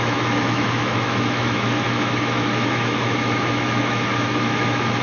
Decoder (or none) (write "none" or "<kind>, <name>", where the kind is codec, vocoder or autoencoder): autoencoder, DAC-VAE